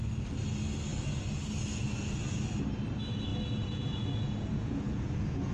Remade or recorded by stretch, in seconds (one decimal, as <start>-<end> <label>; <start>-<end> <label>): 0.0-3.3 recorded; 3.3-5.5 remade

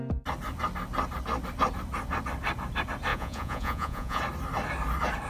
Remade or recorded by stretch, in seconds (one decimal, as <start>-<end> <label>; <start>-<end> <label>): 0.0-3.1 recorded; 3.1-4.2 remade; 4.2-5.3 recorded

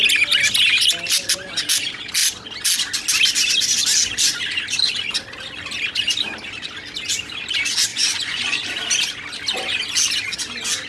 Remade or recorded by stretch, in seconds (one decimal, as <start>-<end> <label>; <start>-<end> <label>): 0.0-7.9 recorded; 7.9-8.6 remade; 8.6-10.9 recorded